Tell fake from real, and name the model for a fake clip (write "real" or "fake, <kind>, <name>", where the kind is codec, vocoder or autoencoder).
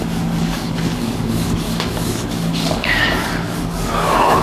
fake, codec, DAC